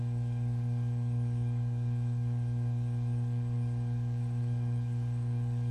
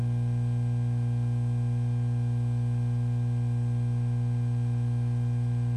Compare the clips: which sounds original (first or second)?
second